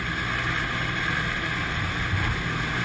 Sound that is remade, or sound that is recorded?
recorded